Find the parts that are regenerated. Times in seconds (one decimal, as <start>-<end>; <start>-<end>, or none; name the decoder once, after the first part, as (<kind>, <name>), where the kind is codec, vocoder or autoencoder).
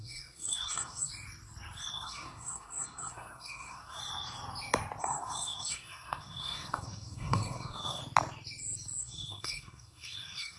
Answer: 0.0-1.1 (codec, SNAC); 1.9-4.0; 5.0-8.0; 9.0-10.6